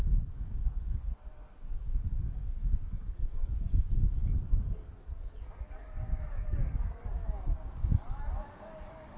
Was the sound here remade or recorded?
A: remade